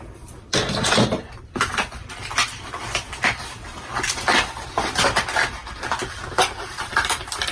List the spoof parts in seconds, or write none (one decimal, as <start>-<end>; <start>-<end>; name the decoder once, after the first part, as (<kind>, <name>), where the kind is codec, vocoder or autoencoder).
0.0-7.5 (vocoder, BigVGAN v2)